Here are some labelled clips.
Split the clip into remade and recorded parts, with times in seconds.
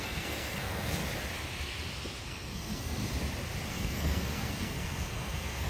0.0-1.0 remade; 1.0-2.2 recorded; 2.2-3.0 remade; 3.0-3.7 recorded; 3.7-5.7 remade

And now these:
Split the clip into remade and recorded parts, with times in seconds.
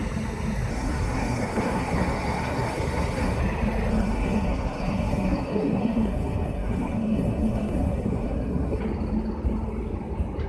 0.0-0.7 recorded; 0.7-3.4 remade; 3.4-3.9 recorded; 3.9-8.8 remade; 8.8-10.5 recorded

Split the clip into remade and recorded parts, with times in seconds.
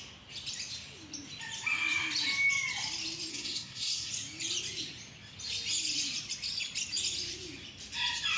0.0-3.3 recorded; 3.3-4.1 remade; 4.1-8.4 recorded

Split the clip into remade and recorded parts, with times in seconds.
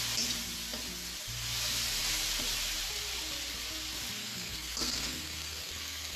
0.0-4.2 recorded; 4.2-6.2 remade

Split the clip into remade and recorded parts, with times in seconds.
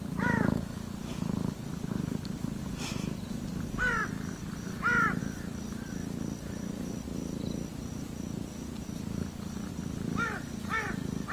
0.0-11.3 recorded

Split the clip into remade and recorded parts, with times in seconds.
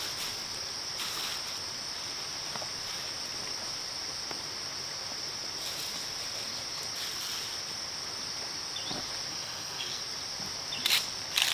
0.0-9.3 recorded; 9.3-10.0 remade; 10.0-11.5 recorded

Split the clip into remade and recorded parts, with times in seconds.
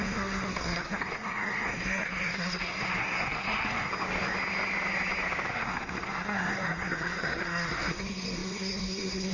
0.0-3.9 remade; 3.9-5.5 recorded; 5.5-9.3 remade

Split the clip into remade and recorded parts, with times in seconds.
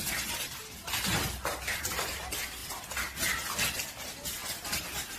0.0-5.2 recorded